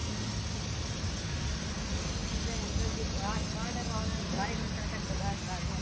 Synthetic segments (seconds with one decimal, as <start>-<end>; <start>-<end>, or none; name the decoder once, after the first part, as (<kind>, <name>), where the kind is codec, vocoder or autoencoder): 1.3-2.2 (vocoder, BigVGAN v2)